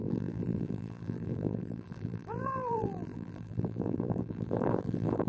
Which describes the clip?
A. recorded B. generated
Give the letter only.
B